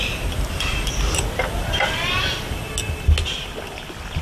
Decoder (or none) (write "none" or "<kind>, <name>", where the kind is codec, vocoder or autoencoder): none